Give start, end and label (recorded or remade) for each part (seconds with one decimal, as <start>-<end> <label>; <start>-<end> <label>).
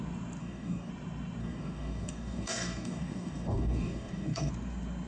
0.0-0.4 recorded; 0.4-0.9 remade; 0.9-1.4 recorded; 1.4-4.5 remade; 4.5-5.1 recorded